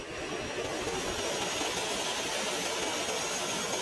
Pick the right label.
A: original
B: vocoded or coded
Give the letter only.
A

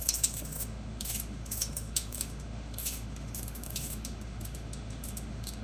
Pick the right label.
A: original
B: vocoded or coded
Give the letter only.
B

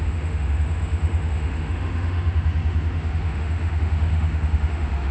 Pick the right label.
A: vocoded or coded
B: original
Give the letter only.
A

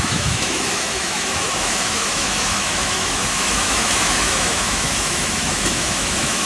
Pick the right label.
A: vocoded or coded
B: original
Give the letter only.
A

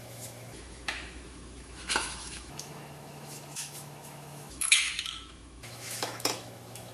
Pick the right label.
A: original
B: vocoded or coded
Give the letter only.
B